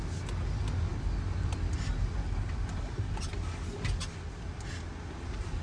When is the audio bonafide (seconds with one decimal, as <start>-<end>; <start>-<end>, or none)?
0.0-5.6